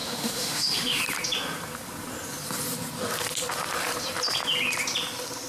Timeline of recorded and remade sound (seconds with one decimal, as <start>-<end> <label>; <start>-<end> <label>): 0.0-1.0 remade; 1.0-5.5 recorded